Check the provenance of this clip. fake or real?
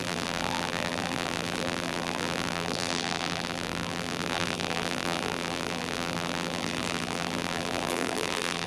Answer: fake